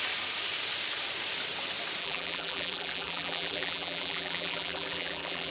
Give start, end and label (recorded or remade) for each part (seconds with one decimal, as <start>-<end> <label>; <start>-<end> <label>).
0.0-2.0 recorded; 2.0-5.5 remade